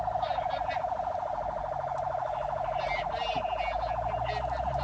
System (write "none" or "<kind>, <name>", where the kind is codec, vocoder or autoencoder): none